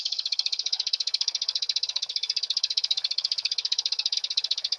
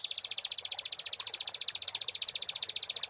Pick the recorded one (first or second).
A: second